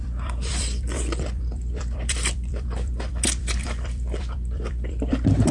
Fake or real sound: fake